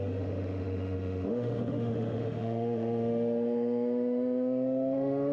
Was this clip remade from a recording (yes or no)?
yes